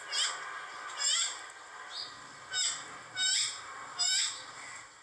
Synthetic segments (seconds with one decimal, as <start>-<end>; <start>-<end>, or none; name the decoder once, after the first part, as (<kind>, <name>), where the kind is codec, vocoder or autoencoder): none